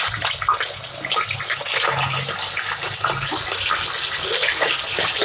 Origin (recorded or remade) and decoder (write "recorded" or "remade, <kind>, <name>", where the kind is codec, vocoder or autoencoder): recorded